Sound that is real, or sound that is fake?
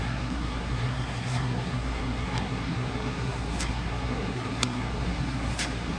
fake